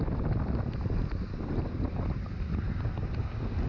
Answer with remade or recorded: recorded